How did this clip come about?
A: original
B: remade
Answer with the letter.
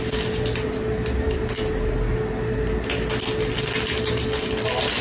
A